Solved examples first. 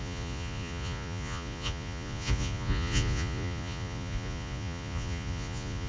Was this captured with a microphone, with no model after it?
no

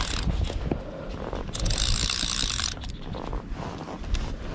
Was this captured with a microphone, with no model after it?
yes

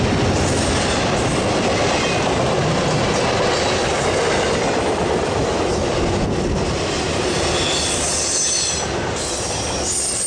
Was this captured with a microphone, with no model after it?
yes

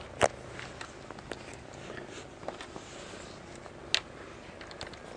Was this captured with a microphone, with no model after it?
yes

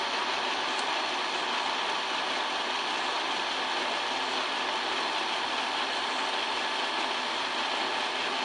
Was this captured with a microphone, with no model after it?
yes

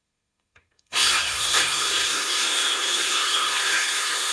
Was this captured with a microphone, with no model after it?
no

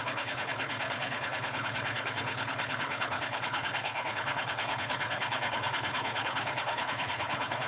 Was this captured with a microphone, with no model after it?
no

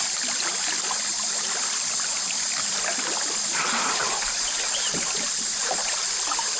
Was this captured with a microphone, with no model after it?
yes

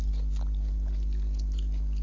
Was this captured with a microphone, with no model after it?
yes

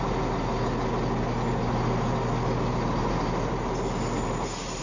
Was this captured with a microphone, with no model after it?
yes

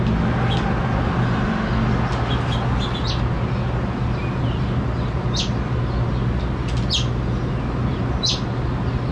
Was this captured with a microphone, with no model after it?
yes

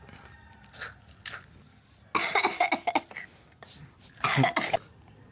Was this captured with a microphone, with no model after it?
yes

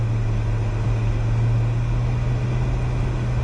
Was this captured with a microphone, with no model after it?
yes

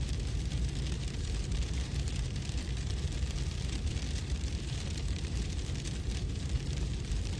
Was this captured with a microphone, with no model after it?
no